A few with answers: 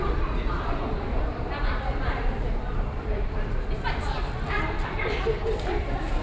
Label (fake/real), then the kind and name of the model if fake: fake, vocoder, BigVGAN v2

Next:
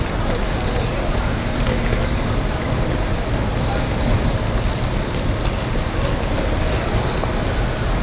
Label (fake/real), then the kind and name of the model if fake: real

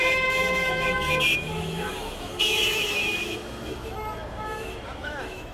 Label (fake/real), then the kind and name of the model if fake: fake, autoencoder, DAC-VAE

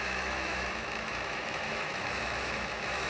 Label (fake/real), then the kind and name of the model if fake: fake, autoencoder, DAC-VAE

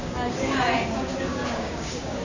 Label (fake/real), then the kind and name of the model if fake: fake, codec, DAC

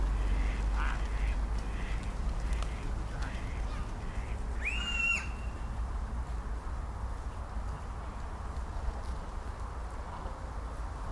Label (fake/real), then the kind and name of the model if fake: real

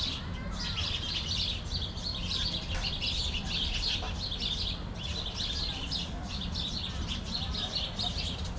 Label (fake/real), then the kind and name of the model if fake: real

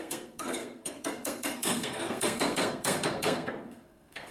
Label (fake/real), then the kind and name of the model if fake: fake, codec, SNAC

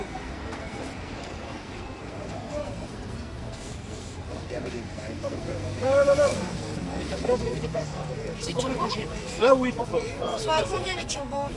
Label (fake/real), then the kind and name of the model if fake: fake, codec, SNAC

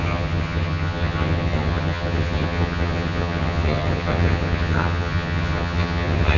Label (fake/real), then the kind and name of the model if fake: fake, vocoder, HiFi-GAN